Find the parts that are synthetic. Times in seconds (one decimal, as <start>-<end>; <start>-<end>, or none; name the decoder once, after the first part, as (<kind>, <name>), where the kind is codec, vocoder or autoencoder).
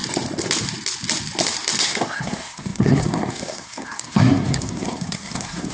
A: 1.8-5.7 (codec, SNAC)